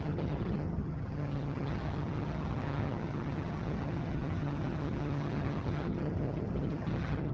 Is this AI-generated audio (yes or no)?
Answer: yes